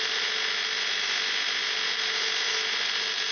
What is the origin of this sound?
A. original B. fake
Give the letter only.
A